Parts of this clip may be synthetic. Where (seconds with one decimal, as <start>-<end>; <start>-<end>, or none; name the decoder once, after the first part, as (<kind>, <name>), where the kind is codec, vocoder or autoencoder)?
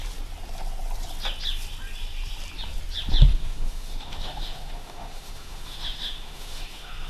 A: 3.3-7.1 (autoencoder, DAC-VAE)